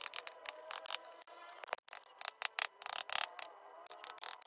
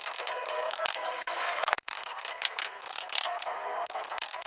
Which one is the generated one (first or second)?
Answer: second